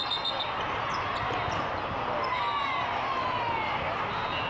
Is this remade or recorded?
recorded